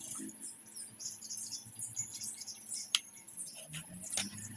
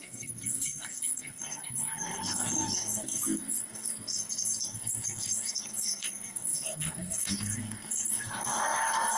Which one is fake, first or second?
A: second